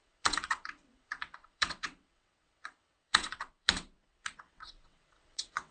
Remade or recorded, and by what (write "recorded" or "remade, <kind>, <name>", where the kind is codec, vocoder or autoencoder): remade, vocoder, WaveNeXt